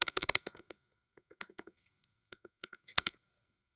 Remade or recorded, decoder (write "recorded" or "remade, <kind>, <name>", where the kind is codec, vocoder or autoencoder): remade, codec, SNAC